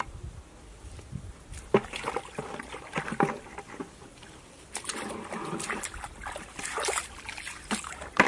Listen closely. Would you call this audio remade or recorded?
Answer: recorded